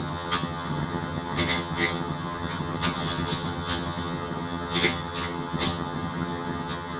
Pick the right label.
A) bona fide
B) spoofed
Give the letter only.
B